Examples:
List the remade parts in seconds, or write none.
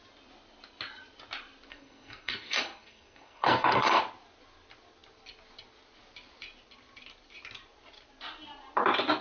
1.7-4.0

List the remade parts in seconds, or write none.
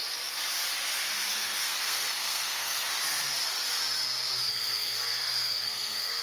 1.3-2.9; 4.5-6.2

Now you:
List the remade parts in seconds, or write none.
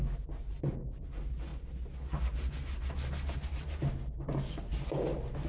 none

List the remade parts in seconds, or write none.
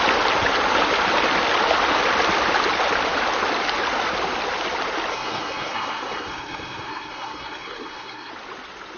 5.1-8.3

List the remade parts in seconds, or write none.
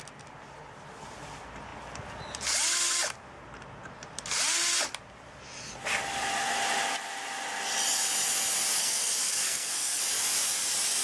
8.8-10.0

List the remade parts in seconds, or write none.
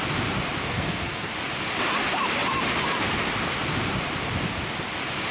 0.7-1.3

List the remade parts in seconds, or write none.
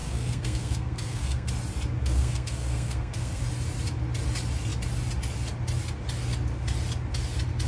0.0-1.5; 2.0-3.4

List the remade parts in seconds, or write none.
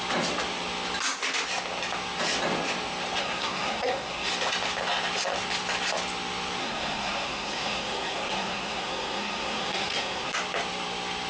3.2-4.3; 6.6-10.3